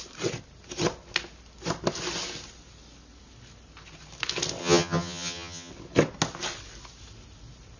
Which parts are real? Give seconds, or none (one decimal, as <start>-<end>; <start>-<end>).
0.0-4.6; 5.7-7.8

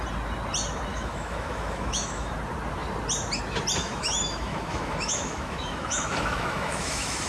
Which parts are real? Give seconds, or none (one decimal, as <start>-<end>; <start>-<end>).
0.0-0.9; 2.3-3.8

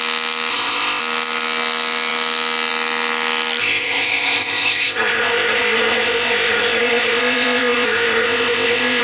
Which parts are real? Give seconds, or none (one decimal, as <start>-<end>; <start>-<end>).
0.0-0.5; 1.0-3.6

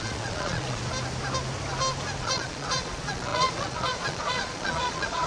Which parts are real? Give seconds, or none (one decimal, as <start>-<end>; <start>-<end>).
0.8-2.2